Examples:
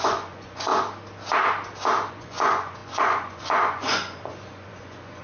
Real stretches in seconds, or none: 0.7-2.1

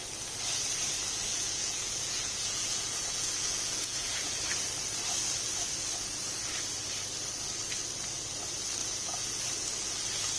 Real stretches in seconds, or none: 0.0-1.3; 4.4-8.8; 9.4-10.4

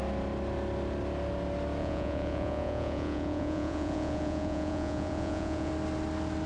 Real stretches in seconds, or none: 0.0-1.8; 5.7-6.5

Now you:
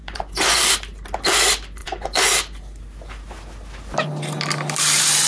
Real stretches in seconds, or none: 0.6-1.8; 2.3-5.3

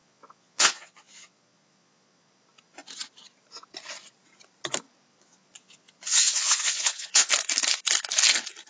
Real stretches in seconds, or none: 2.3-5.1; 7.3-8.7